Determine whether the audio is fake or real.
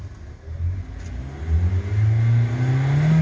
real